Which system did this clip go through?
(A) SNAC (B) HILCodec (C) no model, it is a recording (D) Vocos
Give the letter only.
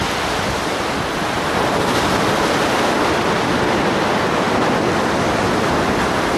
C